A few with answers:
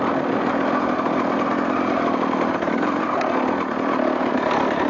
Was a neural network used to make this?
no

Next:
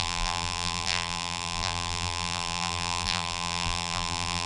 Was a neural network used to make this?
yes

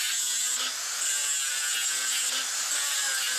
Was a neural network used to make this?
no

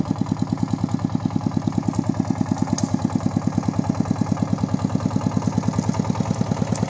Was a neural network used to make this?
no